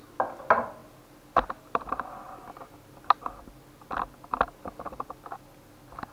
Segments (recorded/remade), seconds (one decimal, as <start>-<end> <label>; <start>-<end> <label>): 0.0-6.1 recorded